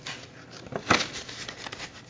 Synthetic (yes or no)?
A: no